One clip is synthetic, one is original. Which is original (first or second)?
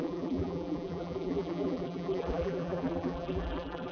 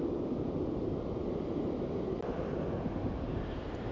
second